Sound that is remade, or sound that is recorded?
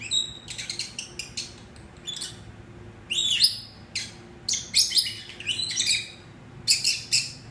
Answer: recorded